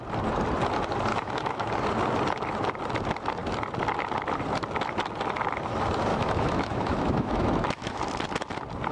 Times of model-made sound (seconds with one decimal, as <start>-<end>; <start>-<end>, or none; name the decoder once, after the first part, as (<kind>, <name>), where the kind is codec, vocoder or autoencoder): 1.1-1.7 (autoencoder, DAC-VAE); 6.1-8.0